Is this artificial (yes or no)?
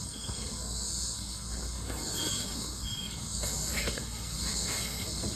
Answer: yes